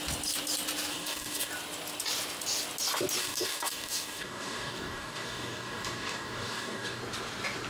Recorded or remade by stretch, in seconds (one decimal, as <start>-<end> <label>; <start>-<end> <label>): 0.0-0.9 recorded; 0.9-1.5 remade; 1.5-3.2 recorded; 3.2-7.0 remade; 7.0-7.7 recorded